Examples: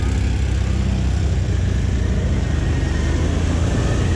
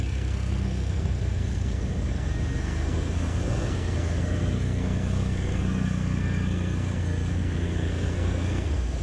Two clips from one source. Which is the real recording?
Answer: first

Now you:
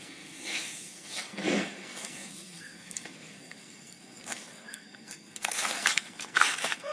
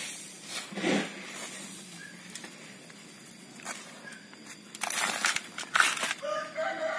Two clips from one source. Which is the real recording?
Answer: second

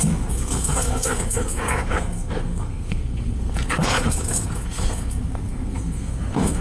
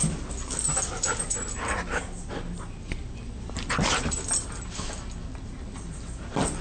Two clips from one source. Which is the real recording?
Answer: second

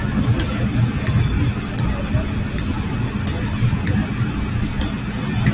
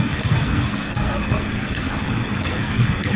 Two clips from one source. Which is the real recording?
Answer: first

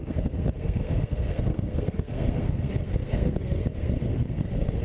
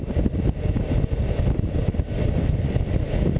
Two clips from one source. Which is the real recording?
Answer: second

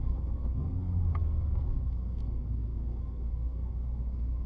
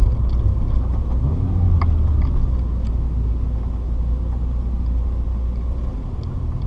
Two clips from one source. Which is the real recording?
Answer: second